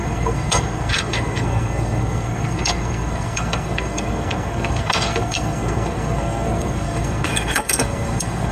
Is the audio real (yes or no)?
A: no